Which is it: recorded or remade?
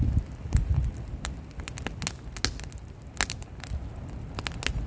recorded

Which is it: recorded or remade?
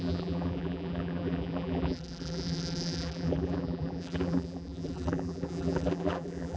remade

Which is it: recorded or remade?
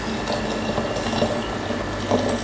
recorded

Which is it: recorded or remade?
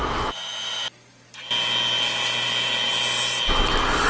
recorded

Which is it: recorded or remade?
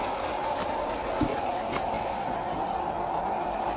recorded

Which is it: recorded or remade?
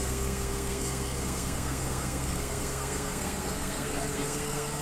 remade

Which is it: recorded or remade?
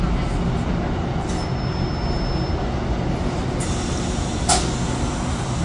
recorded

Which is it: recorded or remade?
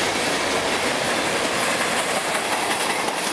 recorded